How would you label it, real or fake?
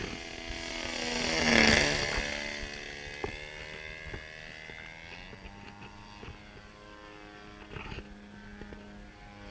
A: real